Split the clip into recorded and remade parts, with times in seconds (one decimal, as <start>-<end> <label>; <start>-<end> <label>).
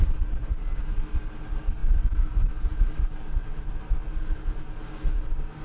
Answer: 0.0-5.6 recorded